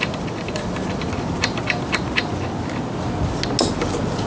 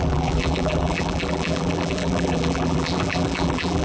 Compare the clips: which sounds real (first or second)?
first